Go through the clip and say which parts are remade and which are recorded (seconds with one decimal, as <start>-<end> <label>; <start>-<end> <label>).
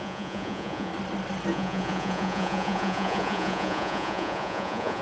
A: 0.0-0.9 remade; 0.9-1.5 recorded; 1.5-5.0 remade